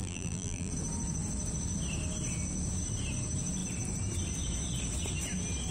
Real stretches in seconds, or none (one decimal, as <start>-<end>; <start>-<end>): 0.7-5.7